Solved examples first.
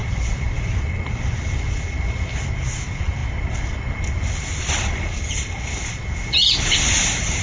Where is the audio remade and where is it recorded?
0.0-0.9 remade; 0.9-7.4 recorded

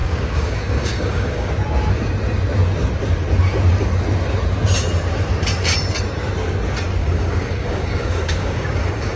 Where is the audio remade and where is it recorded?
0.0-1.5 remade; 1.5-7.0 recorded; 7.0-9.2 remade

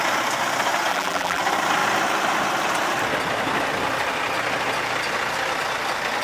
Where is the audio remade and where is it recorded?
0.0-0.9 recorded; 0.9-1.4 remade; 1.4-6.2 recorded

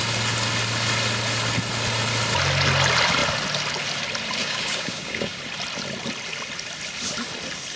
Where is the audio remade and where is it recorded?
0.0-4.4 recorded; 4.4-5.4 remade; 5.4-7.8 recorded